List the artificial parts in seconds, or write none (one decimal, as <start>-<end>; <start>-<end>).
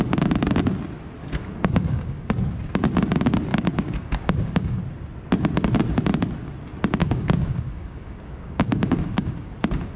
1.2-2.3; 3.5-4.8; 7.0-9.5